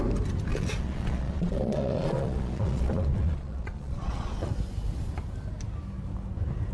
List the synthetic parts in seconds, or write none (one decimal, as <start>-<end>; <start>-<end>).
0.5-4.5